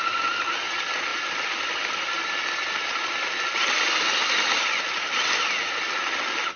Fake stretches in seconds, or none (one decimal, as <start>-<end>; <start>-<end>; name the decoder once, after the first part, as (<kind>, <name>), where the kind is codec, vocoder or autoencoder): none